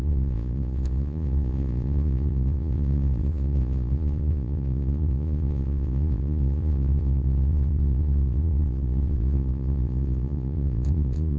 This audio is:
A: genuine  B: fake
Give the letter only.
B